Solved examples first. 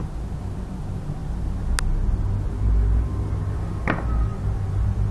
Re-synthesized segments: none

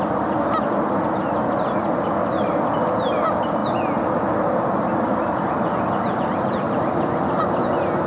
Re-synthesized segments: none

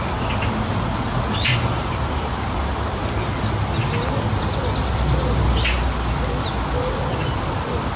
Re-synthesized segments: none

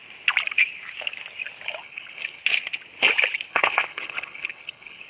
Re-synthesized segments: 1.8-2.4 (codec, HILCodec); 3.5-5.1